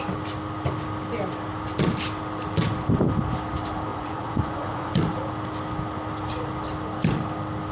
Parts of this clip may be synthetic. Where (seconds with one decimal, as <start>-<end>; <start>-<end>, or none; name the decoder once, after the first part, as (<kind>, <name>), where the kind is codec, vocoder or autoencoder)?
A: 3.9-4.9 (vocoder, Vocos)